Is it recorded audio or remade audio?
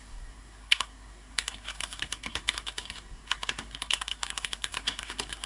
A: remade